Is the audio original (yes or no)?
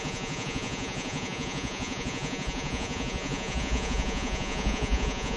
no